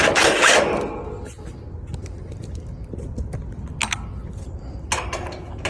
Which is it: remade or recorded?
recorded